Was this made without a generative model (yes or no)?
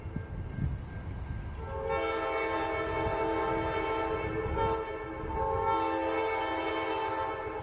yes